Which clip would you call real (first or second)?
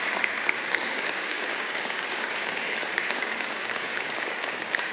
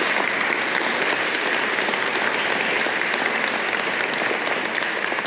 second